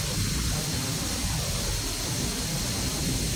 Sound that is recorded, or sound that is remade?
recorded